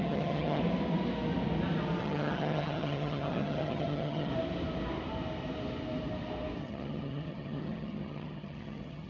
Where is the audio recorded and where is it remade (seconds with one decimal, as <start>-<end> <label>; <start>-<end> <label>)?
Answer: 0.0-0.6 remade; 0.6-2.0 recorded; 2.0-4.3 remade; 4.3-6.6 recorded; 6.6-9.1 remade